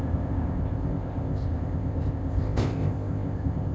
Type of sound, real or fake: fake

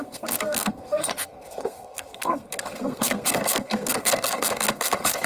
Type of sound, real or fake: fake